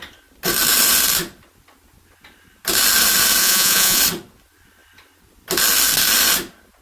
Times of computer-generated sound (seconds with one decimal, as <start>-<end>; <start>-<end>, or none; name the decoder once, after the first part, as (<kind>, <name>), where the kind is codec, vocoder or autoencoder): 3.4-4.0 (vocoder, Vocos)